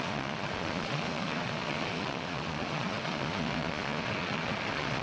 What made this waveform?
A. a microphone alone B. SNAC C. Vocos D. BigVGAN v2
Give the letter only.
C